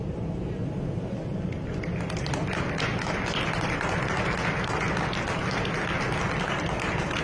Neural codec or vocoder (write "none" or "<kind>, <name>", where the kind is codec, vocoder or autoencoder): none